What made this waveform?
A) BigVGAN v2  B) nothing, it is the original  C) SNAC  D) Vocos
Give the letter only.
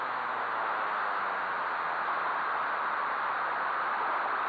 B